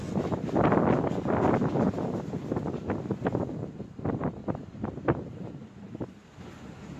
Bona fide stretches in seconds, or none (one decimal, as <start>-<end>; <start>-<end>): 0.0-4.4; 5.0-7.0